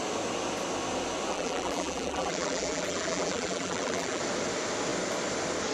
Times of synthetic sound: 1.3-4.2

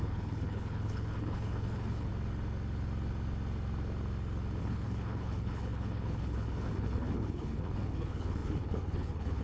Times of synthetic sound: 0.0-2.1; 4.6-9.4

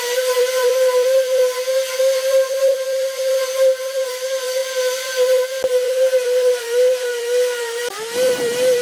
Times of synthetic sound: 0.0-1.4; 2.0-8.8

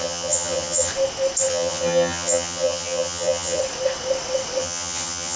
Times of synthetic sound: 0.0-0.9; 1.5-3.6; 4.6-5.4